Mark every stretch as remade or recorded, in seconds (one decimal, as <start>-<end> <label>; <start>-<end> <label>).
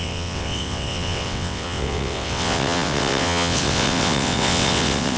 0.0-5.2 remade